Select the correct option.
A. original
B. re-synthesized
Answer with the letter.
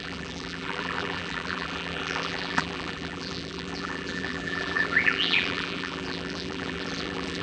B